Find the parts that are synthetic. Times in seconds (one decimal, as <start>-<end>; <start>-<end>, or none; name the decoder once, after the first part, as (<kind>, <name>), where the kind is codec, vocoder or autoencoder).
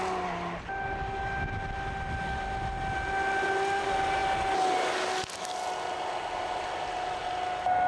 none